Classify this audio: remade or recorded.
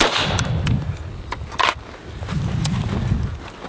recorded